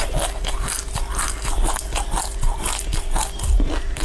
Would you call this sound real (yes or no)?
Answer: yes